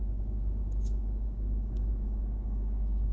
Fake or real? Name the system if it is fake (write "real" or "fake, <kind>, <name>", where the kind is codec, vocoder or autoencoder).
fake, codec, DAC